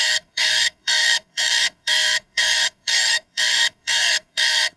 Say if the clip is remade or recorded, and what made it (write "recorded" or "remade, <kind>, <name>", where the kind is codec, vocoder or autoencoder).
remade, codec, SNAC